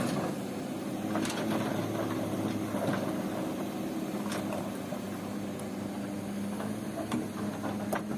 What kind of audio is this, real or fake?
real